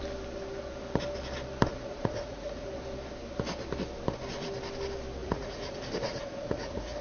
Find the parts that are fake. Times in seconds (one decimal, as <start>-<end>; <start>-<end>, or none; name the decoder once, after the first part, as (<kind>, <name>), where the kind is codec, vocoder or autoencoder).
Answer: 1.7-2.7 (vocoder, Vocos); 5.2-7.0